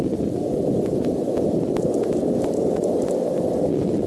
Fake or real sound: real